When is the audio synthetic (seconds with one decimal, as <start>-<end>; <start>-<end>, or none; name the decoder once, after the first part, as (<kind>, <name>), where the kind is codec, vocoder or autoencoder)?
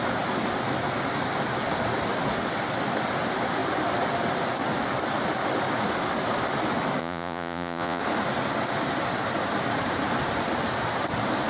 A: 7.0-8.0 (vocoder, Vocos)